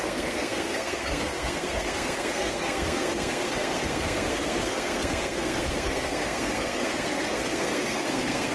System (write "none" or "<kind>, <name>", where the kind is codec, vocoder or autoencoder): codec, SNAC